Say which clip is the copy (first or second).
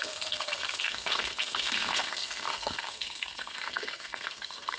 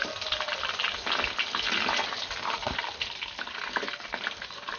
first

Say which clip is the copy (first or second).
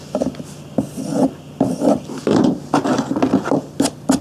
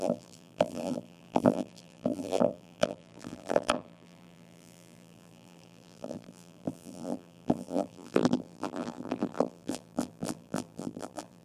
second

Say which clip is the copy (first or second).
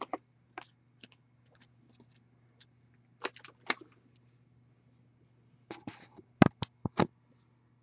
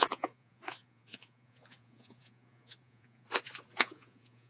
second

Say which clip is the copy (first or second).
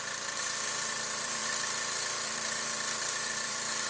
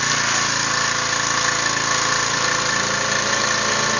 first